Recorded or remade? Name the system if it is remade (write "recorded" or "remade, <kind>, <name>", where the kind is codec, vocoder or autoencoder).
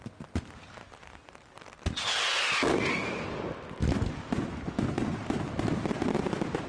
recorded